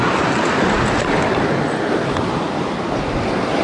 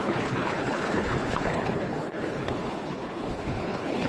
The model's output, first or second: second